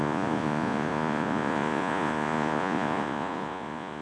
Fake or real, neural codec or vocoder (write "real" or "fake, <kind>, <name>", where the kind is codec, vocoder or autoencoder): fake, vocoder, Vocos